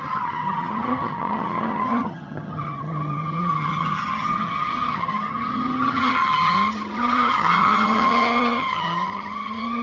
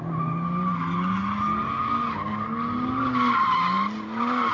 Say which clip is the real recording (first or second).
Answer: second